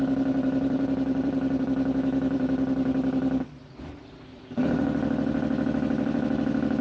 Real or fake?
fake